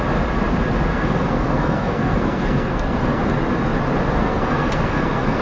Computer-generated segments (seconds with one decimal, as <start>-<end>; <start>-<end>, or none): 0.9-3.2; 4.2-5.4